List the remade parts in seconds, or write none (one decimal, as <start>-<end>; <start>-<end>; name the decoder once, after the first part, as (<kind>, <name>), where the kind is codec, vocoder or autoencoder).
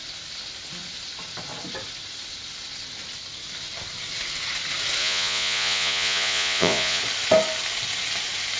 5.0-7.0 (vocoder, Vocos)